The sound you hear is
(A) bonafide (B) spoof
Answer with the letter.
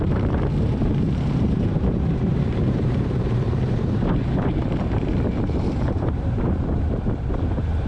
B